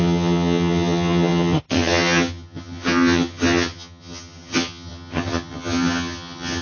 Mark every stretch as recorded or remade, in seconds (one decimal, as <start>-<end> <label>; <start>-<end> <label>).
0.0-6.6 remade